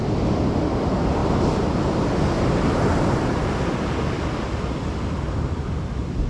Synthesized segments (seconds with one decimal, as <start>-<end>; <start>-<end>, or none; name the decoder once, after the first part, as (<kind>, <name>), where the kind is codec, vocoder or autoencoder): none

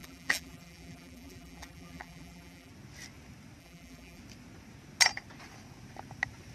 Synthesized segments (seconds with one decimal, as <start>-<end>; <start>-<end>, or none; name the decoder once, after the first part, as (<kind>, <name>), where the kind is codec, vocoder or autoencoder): 0.0-2.7 (vocoder, BigVGAN v2); 3.6-4.2

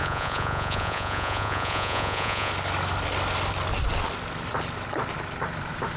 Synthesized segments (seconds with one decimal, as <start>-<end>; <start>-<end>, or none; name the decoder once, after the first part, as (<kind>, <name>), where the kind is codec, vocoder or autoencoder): 0.0-2.5 (vocoder, Vocos)

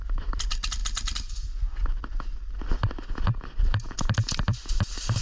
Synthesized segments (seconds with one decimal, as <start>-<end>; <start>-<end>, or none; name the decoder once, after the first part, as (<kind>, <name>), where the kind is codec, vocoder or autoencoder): 0.0-0.8 (vocoder, BigVGAN v2); 3.4-5.2

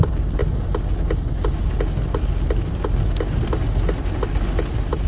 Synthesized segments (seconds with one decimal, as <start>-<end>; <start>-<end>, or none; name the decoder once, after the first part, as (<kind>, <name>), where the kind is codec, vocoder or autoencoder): none

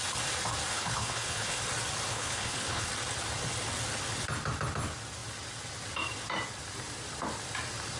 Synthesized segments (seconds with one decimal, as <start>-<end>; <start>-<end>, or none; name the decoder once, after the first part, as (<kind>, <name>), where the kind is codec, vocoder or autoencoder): 0.7-1.6 (codec, HILCodec); 2.1-2.9

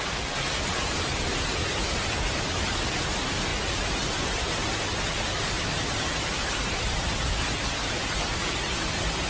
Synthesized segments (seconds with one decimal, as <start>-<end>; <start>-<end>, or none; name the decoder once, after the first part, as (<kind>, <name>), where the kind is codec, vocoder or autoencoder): none

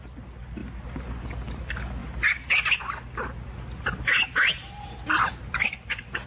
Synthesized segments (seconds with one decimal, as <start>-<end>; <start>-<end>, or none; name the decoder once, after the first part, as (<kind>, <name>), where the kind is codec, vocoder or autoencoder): 0.6-1.2 (vocoder, BigVGAN v2); 5.2-6.3